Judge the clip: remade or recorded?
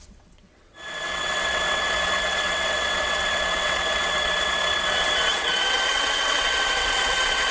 remade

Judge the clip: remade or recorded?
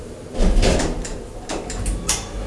remade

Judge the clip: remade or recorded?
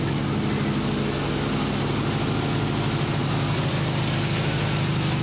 recorded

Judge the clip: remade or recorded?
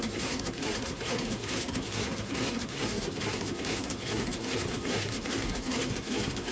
remade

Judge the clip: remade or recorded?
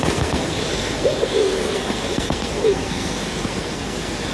remade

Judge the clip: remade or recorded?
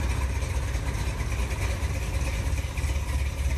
recorded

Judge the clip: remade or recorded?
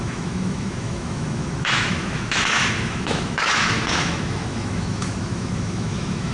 remade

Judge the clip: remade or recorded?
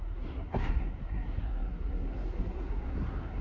remade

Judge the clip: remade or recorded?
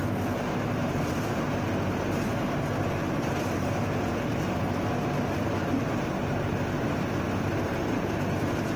recorded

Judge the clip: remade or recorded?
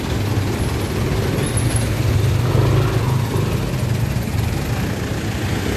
recorded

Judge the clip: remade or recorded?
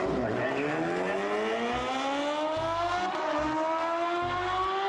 recorded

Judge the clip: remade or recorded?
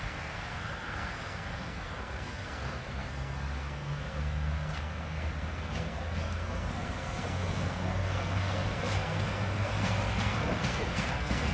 remade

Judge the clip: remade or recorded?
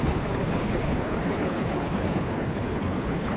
remade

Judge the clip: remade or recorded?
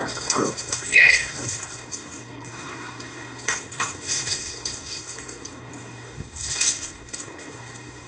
remade